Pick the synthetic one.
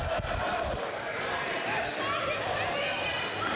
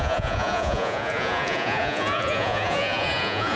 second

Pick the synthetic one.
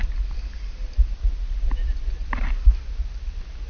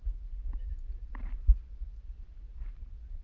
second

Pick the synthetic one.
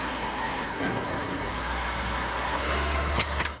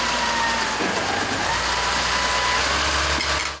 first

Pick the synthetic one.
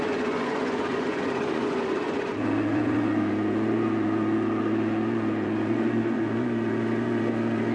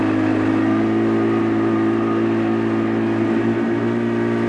first